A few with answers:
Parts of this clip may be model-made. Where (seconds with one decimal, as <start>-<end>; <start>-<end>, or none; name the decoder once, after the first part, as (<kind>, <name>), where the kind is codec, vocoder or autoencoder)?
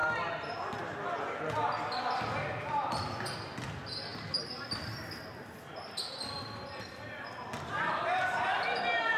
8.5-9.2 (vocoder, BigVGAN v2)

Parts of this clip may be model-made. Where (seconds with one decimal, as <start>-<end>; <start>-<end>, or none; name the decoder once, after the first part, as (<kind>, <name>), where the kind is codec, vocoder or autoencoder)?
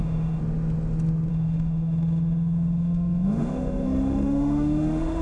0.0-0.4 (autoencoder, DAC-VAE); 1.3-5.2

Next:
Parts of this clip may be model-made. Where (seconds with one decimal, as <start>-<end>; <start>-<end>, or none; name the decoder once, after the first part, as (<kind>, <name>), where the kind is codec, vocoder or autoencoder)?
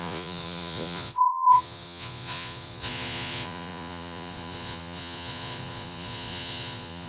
0.0-7.1 (vocoder, Vocos)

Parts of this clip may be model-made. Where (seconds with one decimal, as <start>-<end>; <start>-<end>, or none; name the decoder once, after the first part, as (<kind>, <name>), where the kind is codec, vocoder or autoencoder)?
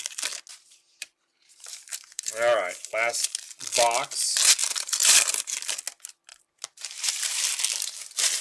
0.5-2.3 (vocoder, BigVGAN v2); 4.6-5.6; 6.3-7.6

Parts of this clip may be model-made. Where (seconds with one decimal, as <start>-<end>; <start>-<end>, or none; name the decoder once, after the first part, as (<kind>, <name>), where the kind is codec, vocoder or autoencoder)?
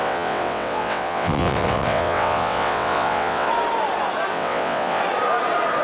0.0-3.5 (vocoder, WaveNeXt); 4.3-5.0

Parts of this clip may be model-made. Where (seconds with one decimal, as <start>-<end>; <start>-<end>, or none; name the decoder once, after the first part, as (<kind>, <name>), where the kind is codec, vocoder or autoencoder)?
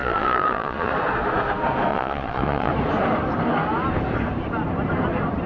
0.0-0.9 (vocoder, Vocos); 1.9-2.7